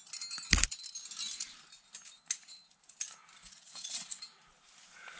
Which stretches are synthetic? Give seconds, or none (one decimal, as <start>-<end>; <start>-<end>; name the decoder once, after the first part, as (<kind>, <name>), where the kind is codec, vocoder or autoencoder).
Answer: 3.4-4.2 (vocoder, WaveNeXt)